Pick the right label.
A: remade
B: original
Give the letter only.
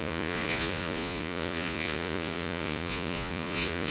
A